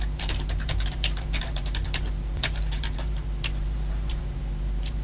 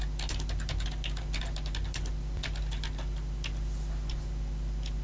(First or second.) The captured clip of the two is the second